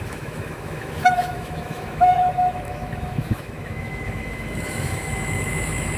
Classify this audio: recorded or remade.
remade